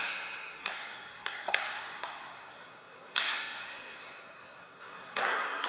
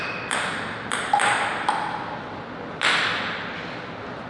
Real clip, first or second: second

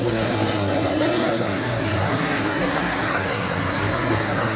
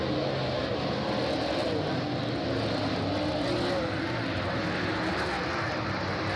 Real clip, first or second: second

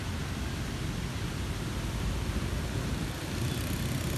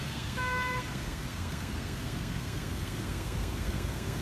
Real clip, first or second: first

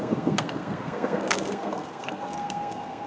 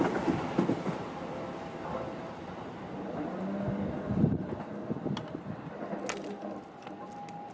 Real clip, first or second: second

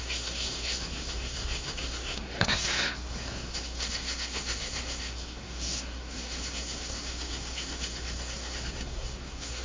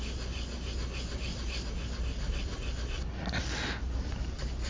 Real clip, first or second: second